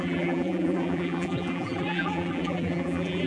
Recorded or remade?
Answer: remade